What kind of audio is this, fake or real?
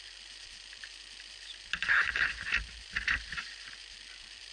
real